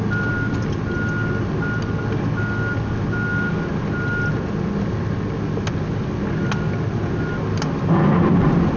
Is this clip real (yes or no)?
yes